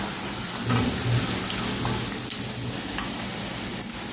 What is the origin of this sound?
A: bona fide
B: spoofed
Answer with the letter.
A